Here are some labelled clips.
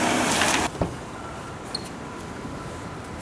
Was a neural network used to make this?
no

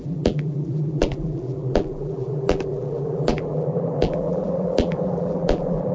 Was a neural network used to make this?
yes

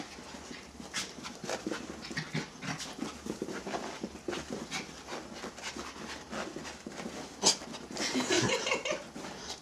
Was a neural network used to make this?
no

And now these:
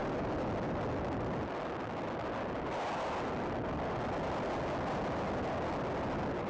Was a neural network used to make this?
no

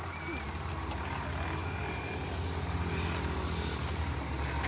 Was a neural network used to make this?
no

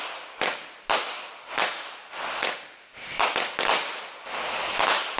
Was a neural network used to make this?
no